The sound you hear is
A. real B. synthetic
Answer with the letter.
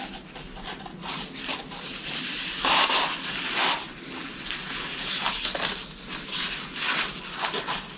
A